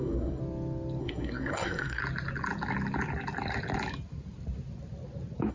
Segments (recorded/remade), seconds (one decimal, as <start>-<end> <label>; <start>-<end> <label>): 0.0-0.4 remade; 0.4-1.0 recorded; 1.0-2.0 remade; 2.0-5.5 recorded